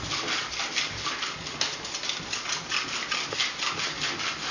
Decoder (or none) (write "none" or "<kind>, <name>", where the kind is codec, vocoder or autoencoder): none